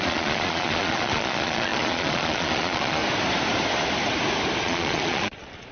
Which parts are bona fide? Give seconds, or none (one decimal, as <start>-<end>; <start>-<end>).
3.0-4.6